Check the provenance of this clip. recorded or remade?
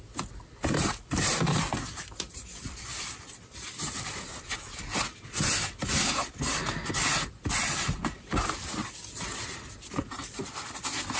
recorded